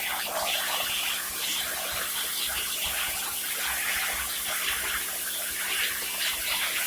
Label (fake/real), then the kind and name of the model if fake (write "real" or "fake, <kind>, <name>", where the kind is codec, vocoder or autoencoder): real